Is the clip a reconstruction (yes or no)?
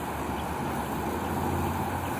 no